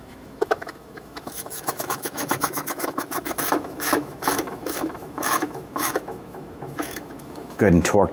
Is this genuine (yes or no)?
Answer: no